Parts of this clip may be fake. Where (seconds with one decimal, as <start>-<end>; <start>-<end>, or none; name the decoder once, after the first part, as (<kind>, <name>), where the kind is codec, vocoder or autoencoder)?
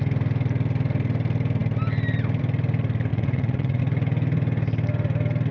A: 3.1-3.8 (vocoder, Vocos)